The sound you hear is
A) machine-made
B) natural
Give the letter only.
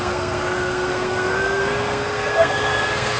A